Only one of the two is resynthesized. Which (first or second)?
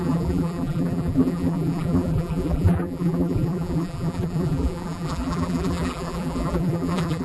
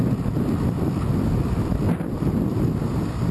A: first